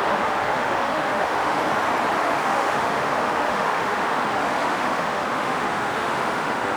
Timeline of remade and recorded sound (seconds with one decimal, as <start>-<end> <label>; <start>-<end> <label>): 0.0-1.6 remade; 1.6-2.2 recorded; 2.2-6.8 remade